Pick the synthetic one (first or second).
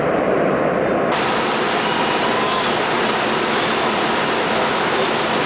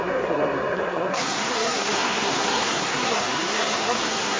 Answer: second